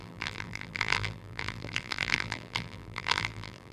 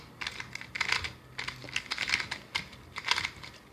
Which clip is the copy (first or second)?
first